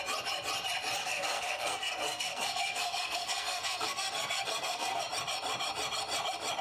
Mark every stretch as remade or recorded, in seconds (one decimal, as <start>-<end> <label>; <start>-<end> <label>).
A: 0.0-1.0 recorded; 1.0-5.0 remade; 5.0-6.6 recorded